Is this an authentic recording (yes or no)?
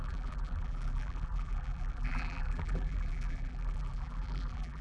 no